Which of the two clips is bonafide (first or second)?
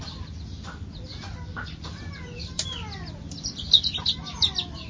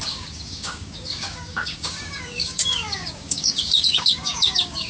first